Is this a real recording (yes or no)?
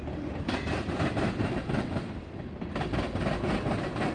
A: yes